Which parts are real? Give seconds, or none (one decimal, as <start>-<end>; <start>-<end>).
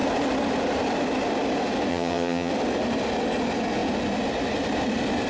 0.0-1.9; 2.5-5.3